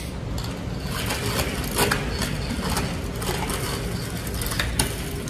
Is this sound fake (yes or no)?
no